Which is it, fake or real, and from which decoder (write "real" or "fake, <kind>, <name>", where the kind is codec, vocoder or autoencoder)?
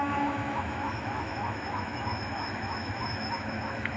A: fake, autoencoder, DAC-VAE